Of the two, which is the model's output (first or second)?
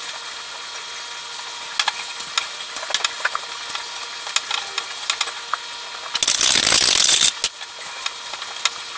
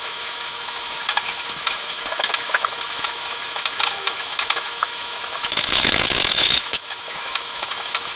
second